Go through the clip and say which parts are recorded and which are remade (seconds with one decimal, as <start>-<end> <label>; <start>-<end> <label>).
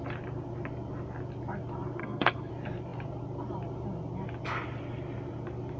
0.0-2.0 recorded; 2.0-2.5 remade; 2.5-5.8 recorded